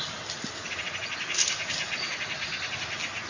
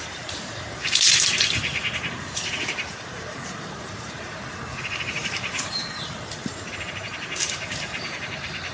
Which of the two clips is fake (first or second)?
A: second